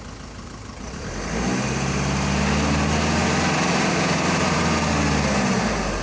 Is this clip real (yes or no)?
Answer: yes